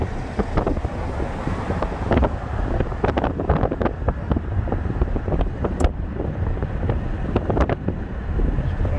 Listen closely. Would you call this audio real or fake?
real